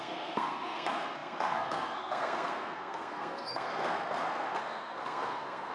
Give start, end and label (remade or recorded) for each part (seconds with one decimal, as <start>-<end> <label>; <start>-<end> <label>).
0.0-5.7 remade